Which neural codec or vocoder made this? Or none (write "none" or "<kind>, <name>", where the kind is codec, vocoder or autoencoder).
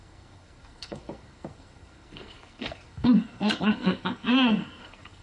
codec, SNAC